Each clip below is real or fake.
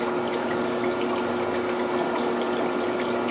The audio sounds real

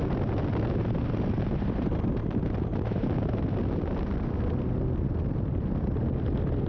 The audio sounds real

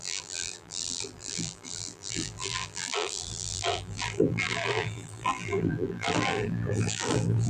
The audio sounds fake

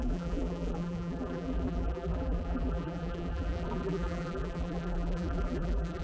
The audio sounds fake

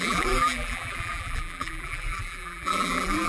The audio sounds fake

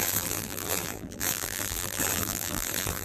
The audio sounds fake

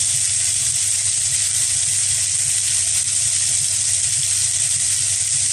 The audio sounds real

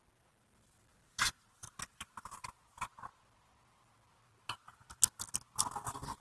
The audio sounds real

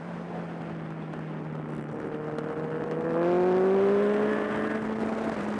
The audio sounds real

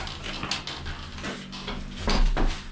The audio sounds real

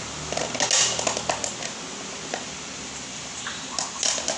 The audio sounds real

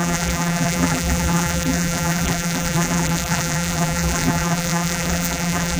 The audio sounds fake